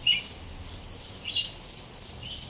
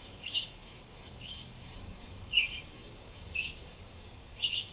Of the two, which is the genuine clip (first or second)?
first